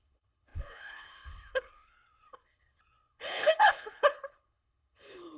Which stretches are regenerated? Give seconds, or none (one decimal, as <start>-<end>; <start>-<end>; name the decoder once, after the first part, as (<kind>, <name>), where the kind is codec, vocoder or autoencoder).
0.0-5.4 (codec, HILCodec)